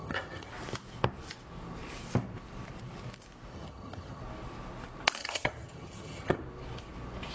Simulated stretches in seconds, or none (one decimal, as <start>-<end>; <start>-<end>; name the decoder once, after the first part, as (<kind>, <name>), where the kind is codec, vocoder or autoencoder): 0.0-0.5 (vocoder, HiFi-GAN); 3.5-4.2; 5.2-6.4